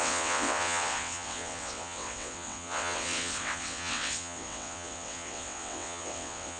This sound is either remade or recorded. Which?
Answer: remade